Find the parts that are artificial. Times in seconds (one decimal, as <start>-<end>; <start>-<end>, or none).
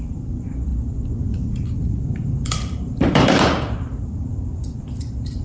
0.0-0.7; 1.3-5.4